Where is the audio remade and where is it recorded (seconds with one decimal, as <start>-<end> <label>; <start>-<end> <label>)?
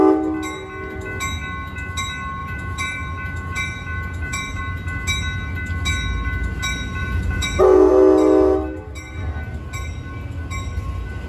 0.0-2.4 recorded; 2.4-4.6 remade; 4.6-7.0 recorded; 7.0-7.9 remade; 7.9-11.3 recorded